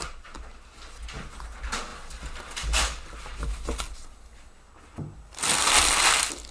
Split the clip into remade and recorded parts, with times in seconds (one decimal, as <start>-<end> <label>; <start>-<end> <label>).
0.0-6.5 recorded